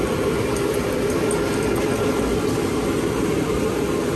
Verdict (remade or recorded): recorded